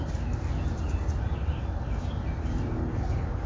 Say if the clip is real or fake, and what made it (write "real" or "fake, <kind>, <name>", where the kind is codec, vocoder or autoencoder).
real